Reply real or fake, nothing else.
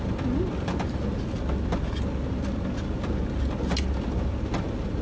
real